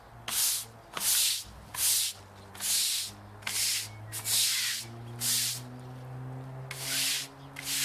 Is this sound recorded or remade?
recorded